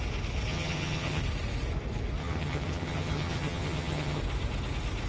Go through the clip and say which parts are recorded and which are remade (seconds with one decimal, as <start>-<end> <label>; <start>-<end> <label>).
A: 0.0-0.5 recorded; 0.5-1.2 remade; 1.2-2.2 recorded; 2.2-4.2 remade; 4.2-5.1 recorded

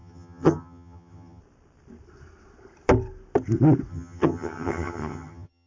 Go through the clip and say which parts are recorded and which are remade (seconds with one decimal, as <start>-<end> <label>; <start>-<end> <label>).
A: 0.0-1.4 remade; 1.4-3.9 recorded; 3.9-5.7 remade

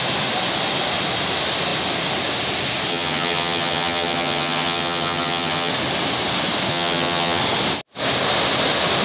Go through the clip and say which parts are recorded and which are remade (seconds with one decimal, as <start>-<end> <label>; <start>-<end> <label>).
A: 0.0-2.9 recorded; 2.9-5.7 remade; 5.7-6.7 recorded; 6.7-7.4 remade; 7.4-9.0 recorded

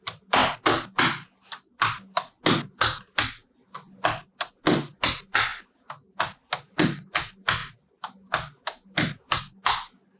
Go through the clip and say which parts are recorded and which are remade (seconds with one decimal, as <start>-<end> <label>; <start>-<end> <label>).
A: 0.0-10.2 recorded